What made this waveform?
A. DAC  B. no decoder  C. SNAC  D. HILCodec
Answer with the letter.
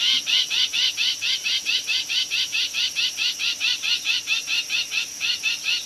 B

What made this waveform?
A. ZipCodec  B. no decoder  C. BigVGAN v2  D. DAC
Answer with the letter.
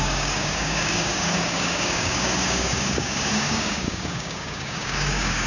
D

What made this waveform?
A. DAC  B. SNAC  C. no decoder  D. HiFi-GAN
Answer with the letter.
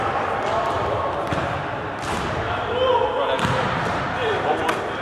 C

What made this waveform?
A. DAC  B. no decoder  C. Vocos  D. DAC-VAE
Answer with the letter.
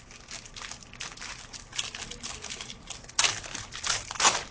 B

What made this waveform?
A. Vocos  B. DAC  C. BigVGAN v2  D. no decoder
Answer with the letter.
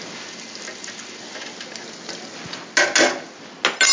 D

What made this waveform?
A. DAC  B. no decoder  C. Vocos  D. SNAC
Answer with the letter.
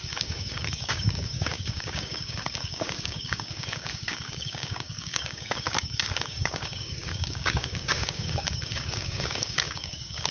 A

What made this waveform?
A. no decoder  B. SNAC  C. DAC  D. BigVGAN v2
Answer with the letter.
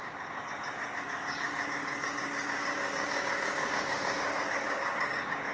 C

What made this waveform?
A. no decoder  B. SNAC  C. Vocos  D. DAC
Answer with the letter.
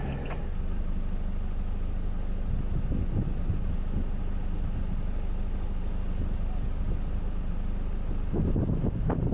A